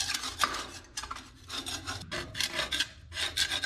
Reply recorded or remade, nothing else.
recorded